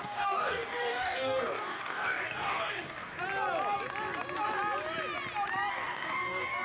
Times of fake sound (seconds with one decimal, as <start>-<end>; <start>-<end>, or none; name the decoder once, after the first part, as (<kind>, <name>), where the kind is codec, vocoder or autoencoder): 0.0-3.1 (codec, DAC); 5.7-6.6